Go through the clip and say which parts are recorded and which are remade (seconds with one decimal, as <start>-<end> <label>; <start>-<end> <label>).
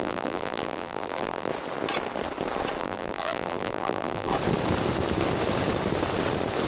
0.0-1.5 remade; 1.5-2.8 recorded; 2.8-4.3 remade; 4.3-6.7 recorded